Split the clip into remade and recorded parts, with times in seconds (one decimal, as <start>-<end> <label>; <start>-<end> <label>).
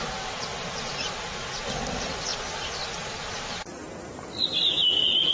0.0-2.3 remade; 2.3-5.3 recorded